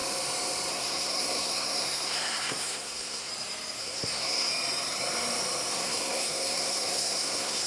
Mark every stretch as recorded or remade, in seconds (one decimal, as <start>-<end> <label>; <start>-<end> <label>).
0.0-0.7 recorded; 0.7-3.3 remade; 3.3-3.8 recorded; 3.8-4.5 remade; 4.5-5.7 recorded; 5.7-7.7 remade